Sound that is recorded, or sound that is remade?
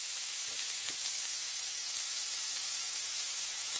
remade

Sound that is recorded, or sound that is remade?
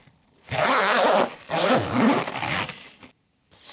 recorded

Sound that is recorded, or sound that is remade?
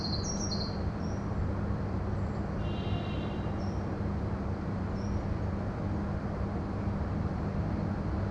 remade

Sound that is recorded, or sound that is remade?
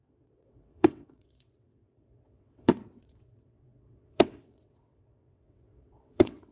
remade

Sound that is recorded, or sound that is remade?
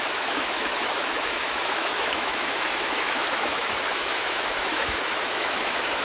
remade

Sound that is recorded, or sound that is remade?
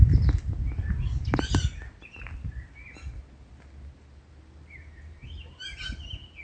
recorded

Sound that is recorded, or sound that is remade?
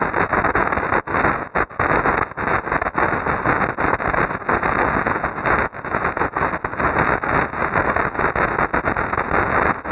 recorded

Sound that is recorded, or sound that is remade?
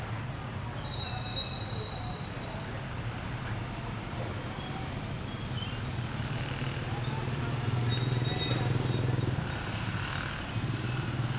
recorded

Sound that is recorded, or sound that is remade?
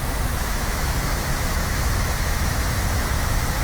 remade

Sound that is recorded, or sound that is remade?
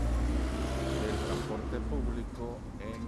recorded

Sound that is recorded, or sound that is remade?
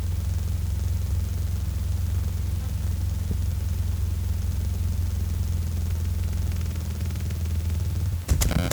recorded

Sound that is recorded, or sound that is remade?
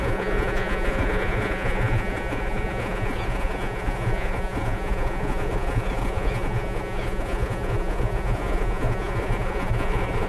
remade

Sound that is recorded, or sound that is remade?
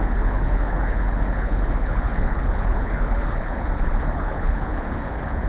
remade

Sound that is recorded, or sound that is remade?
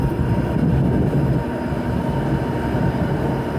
recorded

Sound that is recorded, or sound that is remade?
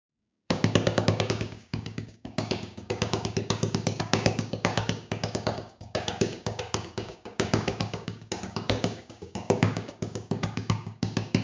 remade